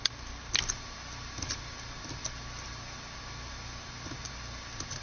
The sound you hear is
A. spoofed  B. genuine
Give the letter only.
B